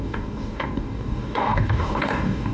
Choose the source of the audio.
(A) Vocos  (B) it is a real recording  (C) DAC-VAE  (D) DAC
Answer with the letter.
D